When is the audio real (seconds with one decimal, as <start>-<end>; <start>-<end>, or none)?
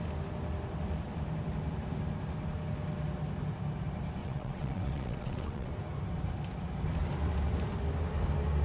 0.0-4.2; 5.7-8.6